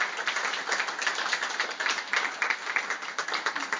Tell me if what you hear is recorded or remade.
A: recorded